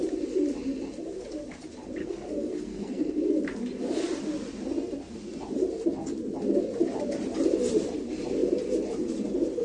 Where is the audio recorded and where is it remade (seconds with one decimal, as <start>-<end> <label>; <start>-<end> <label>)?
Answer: 0.0-2.0 recorded; 2.0-3.1 remade; 3.1-9.6 recorded